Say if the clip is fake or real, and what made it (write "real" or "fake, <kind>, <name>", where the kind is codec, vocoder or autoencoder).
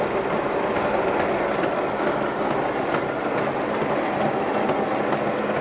real